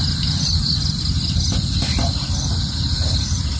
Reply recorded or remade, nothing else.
recorded